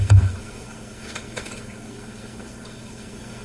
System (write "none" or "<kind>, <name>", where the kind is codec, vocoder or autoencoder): codec, SNAC